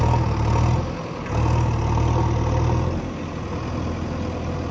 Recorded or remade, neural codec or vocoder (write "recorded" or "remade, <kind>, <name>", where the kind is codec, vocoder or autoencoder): recorded